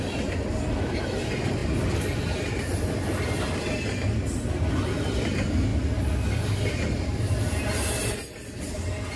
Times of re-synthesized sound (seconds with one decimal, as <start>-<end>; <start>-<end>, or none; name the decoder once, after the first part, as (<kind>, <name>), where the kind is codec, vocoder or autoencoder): none